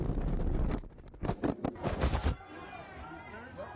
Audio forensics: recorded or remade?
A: recorded